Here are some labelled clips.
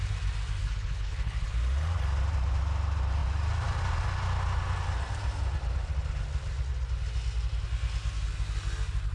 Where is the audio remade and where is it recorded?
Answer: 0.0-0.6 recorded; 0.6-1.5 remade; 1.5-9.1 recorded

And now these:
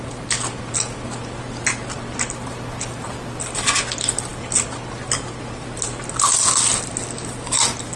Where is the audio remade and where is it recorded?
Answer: 0.0-8.0 recorded

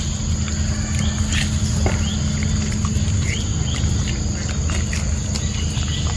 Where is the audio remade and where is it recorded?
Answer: 0.0-6.2 recorded

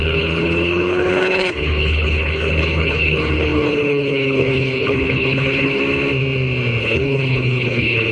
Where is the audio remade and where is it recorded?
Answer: 0.0-5.8 remade; 5.8-6.8 recorded; 6.8-8.1 remade

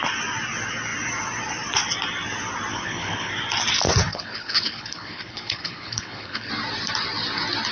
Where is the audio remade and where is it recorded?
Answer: 0.0-2.7 recorded; 2.7-3.3 remade; 3.3-4.1 recorded; 4.1-6.5 remade; 6.5-7.7 recorded